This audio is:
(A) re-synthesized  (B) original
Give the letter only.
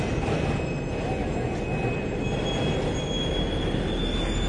B